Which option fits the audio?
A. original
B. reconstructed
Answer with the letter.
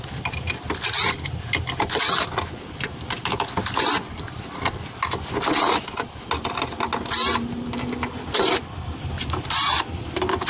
A